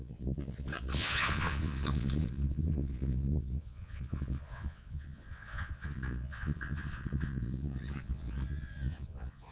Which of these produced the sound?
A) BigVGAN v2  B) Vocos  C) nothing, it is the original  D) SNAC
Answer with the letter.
B